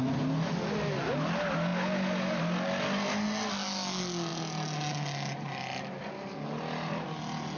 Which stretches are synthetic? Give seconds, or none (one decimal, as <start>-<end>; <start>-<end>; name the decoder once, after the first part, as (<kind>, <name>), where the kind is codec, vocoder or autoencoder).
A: none

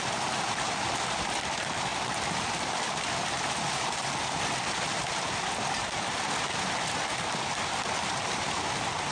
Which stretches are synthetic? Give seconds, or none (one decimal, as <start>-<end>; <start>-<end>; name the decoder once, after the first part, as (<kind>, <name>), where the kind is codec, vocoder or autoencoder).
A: 1.9-4.1 (vocoder, BigVGAN v2)